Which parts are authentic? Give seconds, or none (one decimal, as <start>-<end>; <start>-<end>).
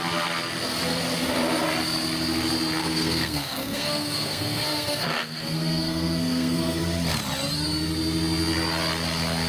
0.0-2.8; 6.8-9.5